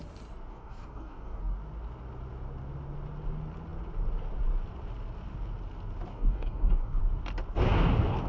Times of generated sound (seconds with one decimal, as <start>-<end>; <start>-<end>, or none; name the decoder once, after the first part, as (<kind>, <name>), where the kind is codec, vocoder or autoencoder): 0.5-1.4 (codec, DAC); 6.1-7.0